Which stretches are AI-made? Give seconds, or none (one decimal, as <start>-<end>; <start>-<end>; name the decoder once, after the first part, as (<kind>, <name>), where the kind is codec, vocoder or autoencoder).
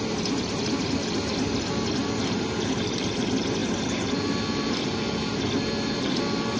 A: none